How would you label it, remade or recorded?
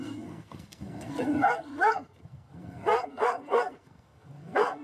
remade